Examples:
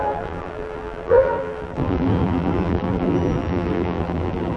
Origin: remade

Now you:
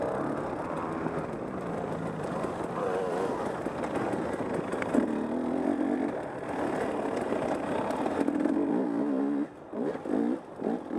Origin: recorded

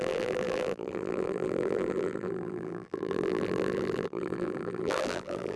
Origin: remade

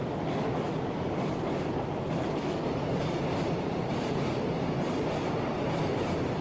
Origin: remade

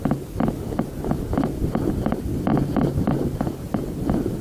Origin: recorded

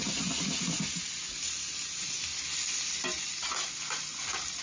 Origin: recorded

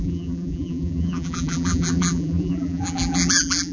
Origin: remade